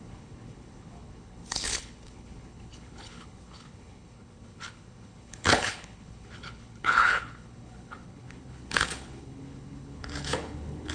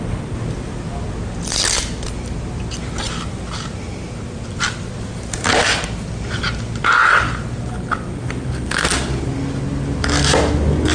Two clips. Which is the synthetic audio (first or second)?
first